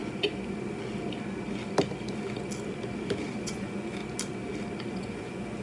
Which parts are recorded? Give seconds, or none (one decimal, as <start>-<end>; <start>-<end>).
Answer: 0.0-3.4; 4.0-4.9